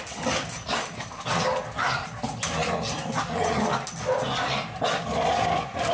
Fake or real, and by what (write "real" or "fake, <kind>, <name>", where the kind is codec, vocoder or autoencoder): real